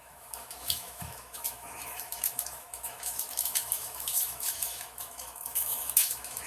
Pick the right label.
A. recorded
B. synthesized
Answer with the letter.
B